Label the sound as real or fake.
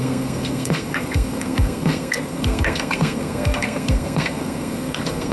fake